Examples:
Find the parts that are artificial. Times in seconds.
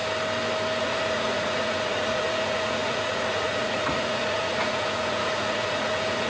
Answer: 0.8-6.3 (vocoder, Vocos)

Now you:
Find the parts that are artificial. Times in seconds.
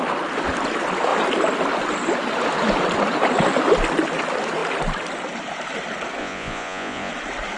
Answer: 6.2-7.1 (vocoder, Vocos)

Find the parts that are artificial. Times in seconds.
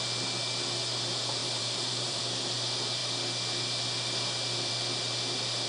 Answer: 1.4-2.2 (vocoder, BigVGAN v2)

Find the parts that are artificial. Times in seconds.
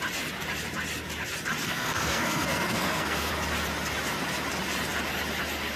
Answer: 1.6-3.3 (codec, SNAC)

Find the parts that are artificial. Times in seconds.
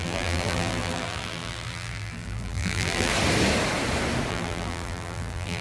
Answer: 0.0-3.1 (vocoder, BigVGAN v2); 4.3-5.6